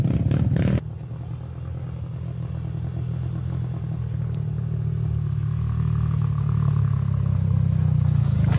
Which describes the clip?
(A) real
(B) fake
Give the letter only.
A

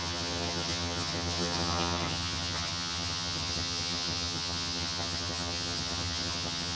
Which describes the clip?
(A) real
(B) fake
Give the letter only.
B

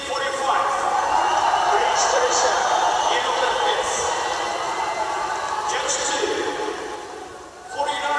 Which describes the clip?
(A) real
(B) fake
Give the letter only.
B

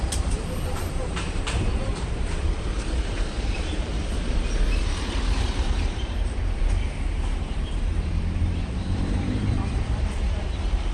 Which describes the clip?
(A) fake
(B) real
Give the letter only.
A